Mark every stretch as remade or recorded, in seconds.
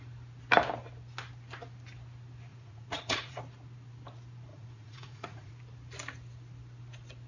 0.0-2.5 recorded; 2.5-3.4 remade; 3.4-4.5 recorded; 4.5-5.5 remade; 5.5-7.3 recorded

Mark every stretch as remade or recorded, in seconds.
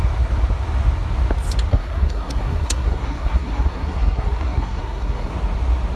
0.0-1.7 recorded; 1.7-5.3 remade; 5.3-6.0 recorded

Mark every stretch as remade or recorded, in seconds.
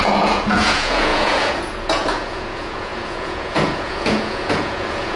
0.0-5.2 remade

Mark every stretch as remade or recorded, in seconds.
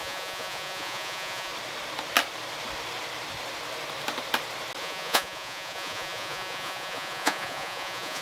0.0-1.5 remade; 1.5-4.8 recorded; 4.8-8.2 remade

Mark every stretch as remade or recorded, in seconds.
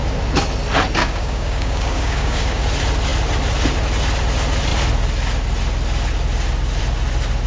0.0-1.0 recorded; 1.0-2.6 remade; 2.6-7.5 recorded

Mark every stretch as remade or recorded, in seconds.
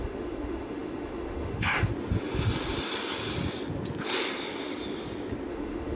0.0-1.9 remade; 1.9-5.5 recorded; 5.5-6.0 remade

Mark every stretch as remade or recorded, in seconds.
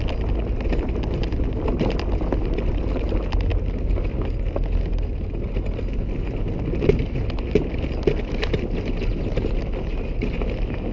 0.0-10.9 recorded